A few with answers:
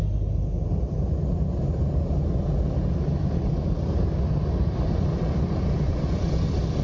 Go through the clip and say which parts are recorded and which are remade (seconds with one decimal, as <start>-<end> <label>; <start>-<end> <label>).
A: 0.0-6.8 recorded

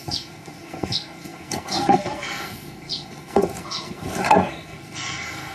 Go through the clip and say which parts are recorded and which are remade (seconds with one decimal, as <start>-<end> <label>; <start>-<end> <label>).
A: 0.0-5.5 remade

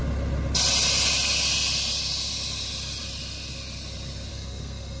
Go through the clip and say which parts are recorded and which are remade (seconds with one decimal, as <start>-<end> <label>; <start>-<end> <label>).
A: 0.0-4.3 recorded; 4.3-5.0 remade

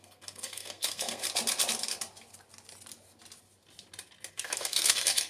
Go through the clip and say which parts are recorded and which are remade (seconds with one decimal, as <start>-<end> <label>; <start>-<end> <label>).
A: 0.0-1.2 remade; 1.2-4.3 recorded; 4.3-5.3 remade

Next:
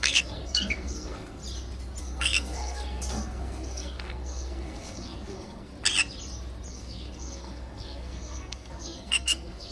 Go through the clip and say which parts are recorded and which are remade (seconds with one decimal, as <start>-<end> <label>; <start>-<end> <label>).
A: 0.0-1.4 remade; 1.4-2.0 recorded; 2.0-5.7 remade; 5.7-6.7 recorded; 6.7-9.7 remade